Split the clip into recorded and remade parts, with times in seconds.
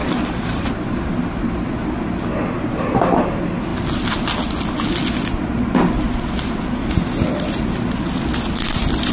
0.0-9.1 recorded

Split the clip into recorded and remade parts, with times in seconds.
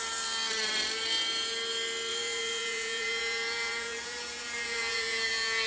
0.0-2.1 recorded; 2.1-5.7 remade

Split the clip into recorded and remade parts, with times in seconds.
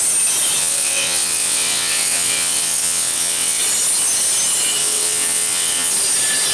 0.0-0.6 recorded; 0.6-3.6 remade; 3.6-4.8 recorded; 4.8-5.9 remade; 5.9-6.5 recorded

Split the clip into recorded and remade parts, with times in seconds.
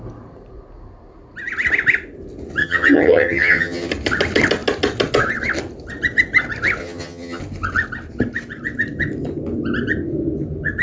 0.0-2.6 recorded; 2.6-3.9 remade; 3.9-6.8 recorded; 6.8-7.4 remade; 7.4-10.8 recorded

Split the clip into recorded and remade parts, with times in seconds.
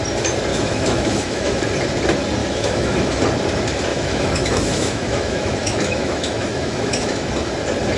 0.0-0.5 recorded; 0.5-1.6 remade; 1.6-2.4 recorded; 2.4-3.2 remade; 3.2-3.9 recorded; 3.9-7.3 remade; 7.3-8.0 recorded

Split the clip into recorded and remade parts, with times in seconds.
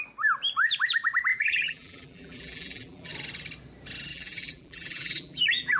0.0-1.3 recorded; 1.3-3.1 remade; 3.1-4.1 recorded; 4.1-5.8 remade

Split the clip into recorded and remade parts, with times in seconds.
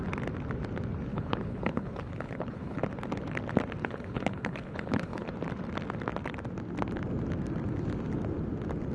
0.0-1.1 recorded; 1.1-2.8 remade; 2.8-3.8 recorded; 3.8-5.3 remade; 5.3-8.9 recorded